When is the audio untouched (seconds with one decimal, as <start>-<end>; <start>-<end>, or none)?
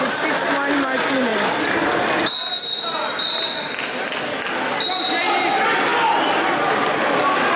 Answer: 0.0-7.6